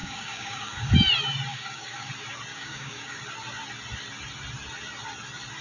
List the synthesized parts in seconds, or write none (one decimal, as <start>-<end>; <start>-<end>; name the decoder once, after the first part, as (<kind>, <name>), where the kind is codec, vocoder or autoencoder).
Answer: 0.0-0.9 (codec, DAC); 1.5-2.1; 2.5-3.2